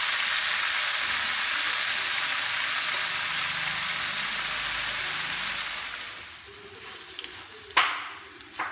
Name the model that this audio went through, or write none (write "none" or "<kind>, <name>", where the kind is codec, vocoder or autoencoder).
none